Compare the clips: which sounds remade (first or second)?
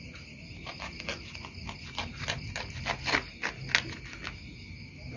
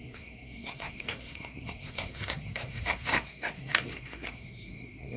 second